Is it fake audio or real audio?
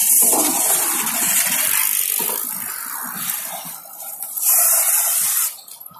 fake